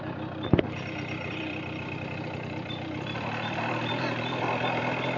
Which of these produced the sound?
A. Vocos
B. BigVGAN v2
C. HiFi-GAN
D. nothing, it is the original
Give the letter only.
B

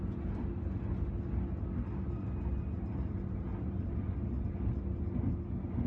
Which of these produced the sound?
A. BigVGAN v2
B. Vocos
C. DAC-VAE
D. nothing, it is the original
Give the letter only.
D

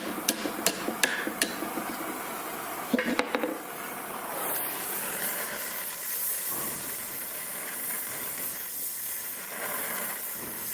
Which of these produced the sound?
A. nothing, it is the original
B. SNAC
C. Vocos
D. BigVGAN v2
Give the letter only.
D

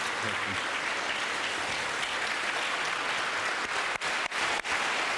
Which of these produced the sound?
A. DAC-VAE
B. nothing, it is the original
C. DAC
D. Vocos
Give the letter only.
B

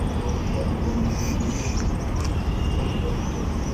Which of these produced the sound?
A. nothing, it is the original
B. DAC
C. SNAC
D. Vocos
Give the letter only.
A